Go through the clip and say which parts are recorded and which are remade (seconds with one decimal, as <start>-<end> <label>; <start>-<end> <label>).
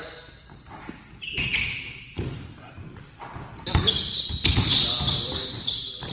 0.0-6.1 recorded